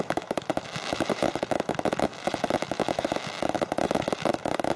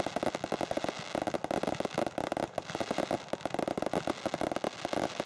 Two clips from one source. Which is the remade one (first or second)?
first